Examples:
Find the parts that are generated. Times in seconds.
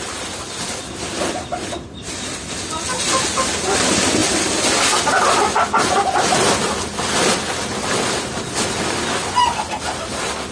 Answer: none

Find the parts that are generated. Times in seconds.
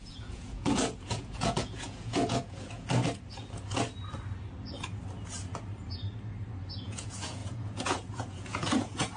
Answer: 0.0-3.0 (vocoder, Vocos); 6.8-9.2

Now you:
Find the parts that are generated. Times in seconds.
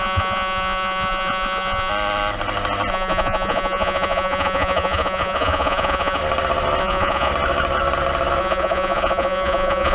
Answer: 0.0-1.9 (vocoder, Vocos); 2.9-6.2; 6.8-7.3; 8.4-9.9